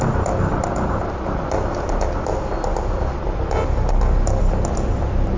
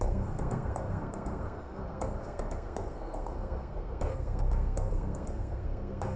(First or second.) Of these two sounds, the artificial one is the second